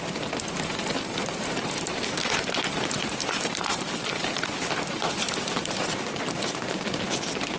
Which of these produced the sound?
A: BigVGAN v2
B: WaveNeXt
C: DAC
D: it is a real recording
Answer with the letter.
A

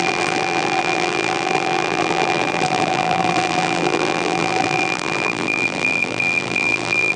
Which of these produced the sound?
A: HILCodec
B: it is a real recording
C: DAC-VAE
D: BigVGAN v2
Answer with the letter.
D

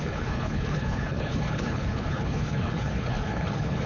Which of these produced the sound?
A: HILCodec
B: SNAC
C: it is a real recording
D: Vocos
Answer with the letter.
A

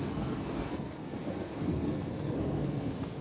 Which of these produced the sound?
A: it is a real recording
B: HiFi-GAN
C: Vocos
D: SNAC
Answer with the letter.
D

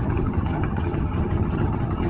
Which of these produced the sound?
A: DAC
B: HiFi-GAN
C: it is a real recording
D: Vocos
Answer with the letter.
B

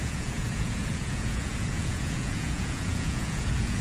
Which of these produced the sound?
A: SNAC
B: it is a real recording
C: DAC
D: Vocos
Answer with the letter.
D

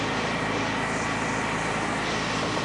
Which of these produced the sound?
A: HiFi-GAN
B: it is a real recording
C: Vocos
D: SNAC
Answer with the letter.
B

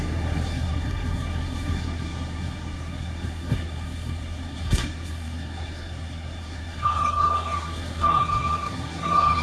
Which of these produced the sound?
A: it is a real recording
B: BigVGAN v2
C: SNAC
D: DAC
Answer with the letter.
C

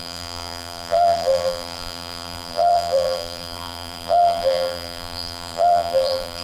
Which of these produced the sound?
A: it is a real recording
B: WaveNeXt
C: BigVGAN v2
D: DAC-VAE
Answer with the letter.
C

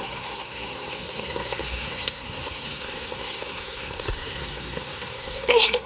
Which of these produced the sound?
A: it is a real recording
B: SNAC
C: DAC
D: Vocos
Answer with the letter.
B